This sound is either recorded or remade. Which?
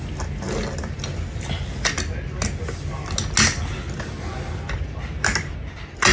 recorded